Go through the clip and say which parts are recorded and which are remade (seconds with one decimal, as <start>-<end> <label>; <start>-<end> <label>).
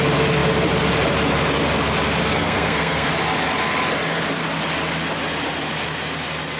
0.0-2.2 recorded; 2.2-3.1 remade; 3.1-6.6 recorded